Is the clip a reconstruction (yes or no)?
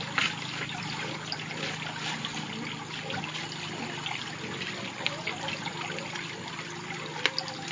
no